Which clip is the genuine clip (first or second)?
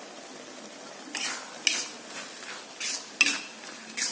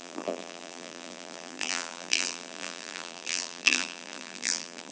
first